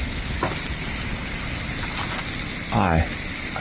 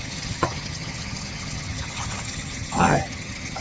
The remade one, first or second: second